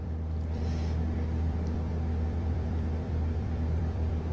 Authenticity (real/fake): fake